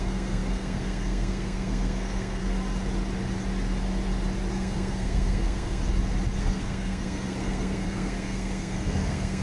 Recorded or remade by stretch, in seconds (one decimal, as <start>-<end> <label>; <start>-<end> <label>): 0.0-2.4 remade; 2.4-4.5 recorded; 4.5-5.8 remade; 5.8-6.4 recorded; 6.4-9.4 remade